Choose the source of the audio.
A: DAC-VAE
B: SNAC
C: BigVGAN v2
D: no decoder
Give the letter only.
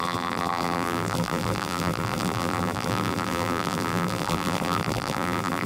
C